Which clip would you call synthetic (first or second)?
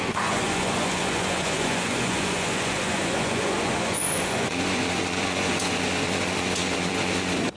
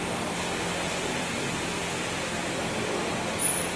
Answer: first